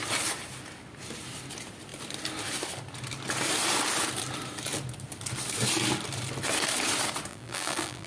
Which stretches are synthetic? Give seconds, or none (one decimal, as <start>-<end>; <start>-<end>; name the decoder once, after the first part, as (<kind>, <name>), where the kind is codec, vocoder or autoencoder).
7.3-8.1 (vocoder, BigVGAN v2)